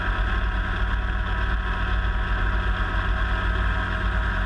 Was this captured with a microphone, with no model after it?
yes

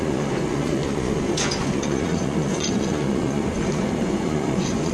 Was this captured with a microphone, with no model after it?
no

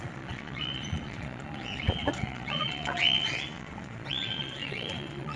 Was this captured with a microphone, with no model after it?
no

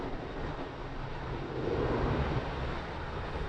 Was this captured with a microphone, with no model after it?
yes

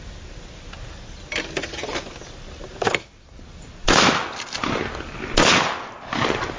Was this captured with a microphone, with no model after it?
yes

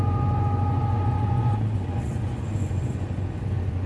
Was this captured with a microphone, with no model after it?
no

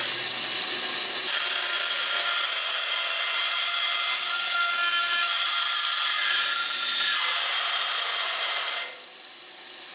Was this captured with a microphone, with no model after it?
yes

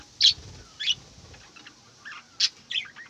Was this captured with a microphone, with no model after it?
yes